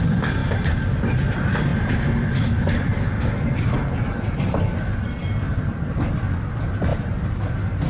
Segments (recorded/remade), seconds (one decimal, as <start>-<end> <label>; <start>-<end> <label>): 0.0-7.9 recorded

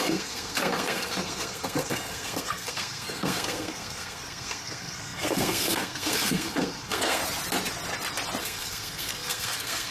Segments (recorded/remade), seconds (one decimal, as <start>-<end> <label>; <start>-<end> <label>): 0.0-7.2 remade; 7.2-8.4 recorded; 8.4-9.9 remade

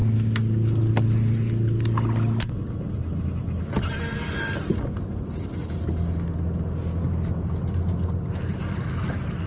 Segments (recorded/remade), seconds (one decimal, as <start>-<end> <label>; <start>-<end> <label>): 0.0-9.5 recorded

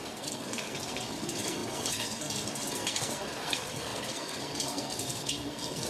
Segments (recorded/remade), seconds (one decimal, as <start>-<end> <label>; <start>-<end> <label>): 0.0-5.9 remade

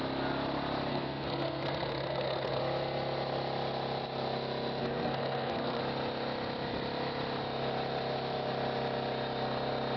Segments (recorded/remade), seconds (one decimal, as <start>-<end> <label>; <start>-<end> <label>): 0.0-0.9 recorded; 0.9-2.6 remade; 2.6-4.8 recorded; 4.8-5.8 remade; 5.8-10.0 recorded

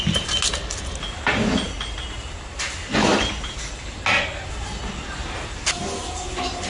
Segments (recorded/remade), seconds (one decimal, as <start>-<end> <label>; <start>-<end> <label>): 0.0-6.7 recorded

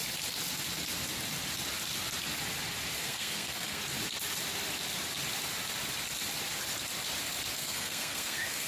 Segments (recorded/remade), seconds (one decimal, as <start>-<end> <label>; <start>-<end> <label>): 0.0-3.0 recorded; 3.0-3.8 remade; 3.8-7.6 recorded; 7.6-8.7 remade

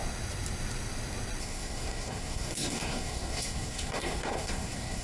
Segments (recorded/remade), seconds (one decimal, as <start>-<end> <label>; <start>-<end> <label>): 0.0-1.4 recorded; 1.4-5.0 remade